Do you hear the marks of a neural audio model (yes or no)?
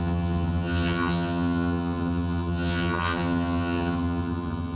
yes